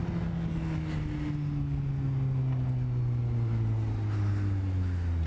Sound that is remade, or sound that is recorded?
recorded